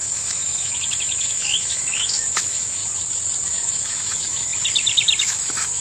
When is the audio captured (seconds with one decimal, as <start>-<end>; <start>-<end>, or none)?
2.8-3.5; 4.5-5.2